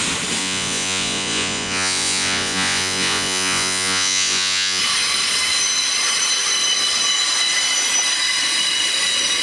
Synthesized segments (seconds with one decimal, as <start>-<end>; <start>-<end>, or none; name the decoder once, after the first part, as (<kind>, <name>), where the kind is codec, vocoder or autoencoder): 0.4-4.8 (vocoder, Vocos)